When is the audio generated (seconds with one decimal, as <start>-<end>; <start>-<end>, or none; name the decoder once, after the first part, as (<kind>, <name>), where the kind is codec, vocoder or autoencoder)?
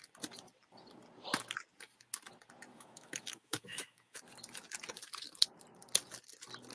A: 2.7-4.2 (autoencoder, DAC-VAE)